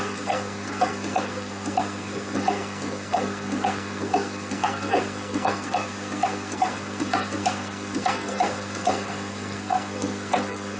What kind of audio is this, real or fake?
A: fake